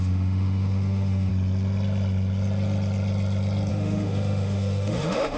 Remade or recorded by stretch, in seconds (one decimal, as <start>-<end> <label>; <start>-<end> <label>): 0.0-1.3 remade; 1.3-3.7 recorded; 3.7-5.4 remade